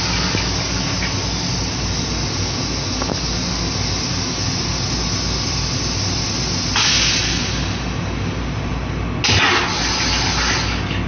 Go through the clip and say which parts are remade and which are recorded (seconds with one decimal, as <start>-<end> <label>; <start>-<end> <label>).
0.0-11.1 recorded